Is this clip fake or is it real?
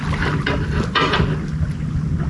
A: real